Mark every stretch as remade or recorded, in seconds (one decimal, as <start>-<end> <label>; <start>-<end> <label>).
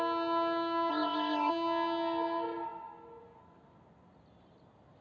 0.0-0.9 recorded; 0.9-1.5 remade; 1.5-5.0 recorded